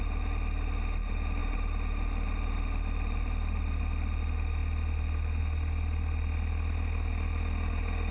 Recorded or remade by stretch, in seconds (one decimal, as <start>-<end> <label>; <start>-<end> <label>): 0.0-1.4 recorded; 1.4-3.8 remade; 3.8-8.1 recorded